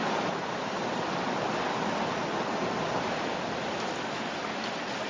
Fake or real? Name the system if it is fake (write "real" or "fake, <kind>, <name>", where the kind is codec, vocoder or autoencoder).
real